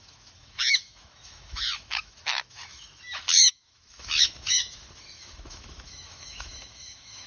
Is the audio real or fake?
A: fake